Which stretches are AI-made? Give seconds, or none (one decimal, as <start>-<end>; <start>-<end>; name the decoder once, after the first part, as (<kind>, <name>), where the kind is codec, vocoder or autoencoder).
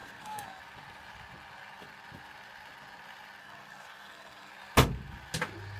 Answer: 0.0-0.6 (codec, SNAC); 3.4-4.5